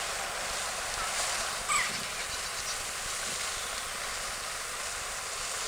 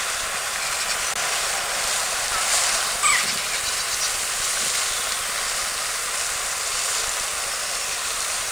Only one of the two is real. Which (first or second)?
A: second